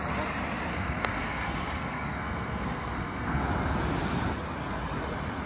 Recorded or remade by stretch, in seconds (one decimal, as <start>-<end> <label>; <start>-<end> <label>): 0.0-0.7 recorded; 0.7-3.4 remade; 3.4-5.5 recorded